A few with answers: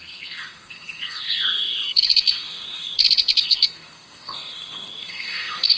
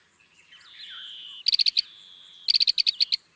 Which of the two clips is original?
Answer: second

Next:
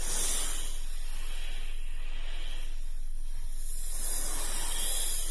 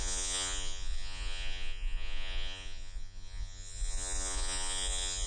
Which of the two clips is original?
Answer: first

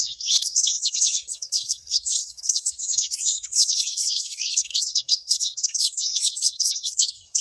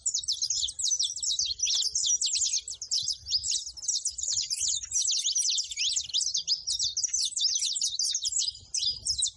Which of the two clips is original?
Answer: second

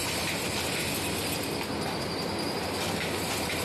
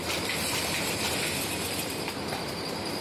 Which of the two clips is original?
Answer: first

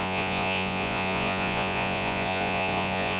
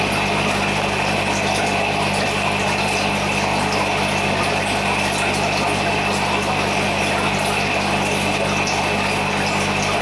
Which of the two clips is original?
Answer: second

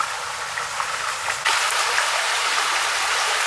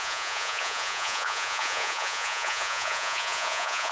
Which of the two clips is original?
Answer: first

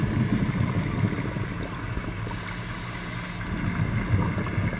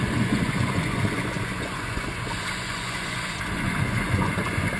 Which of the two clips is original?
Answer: first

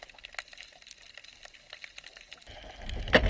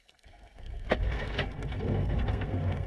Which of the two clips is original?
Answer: first